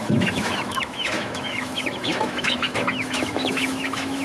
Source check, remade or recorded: remade